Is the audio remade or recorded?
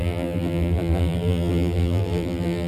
remade